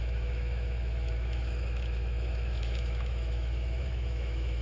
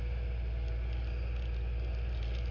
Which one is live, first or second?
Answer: second